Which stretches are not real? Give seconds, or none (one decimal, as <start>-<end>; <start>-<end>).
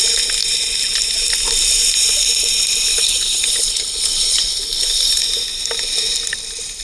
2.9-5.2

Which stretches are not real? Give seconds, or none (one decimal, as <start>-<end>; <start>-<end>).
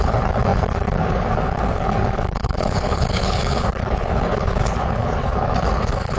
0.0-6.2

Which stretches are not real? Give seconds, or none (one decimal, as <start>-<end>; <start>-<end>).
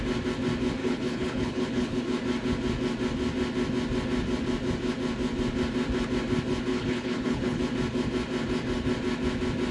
0.8-2.0; 6.7-7.6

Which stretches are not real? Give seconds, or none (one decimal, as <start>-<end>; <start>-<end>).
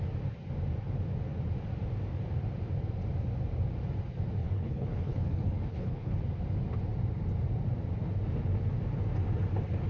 4.4-6.2